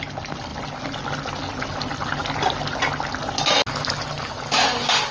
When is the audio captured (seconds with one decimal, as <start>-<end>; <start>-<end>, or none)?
0.0-5.1